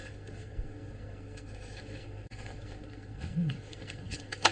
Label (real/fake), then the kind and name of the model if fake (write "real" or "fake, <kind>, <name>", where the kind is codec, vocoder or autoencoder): fake, codec, SNAC